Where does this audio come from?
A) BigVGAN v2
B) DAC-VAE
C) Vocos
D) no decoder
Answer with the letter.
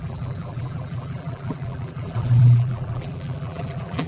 A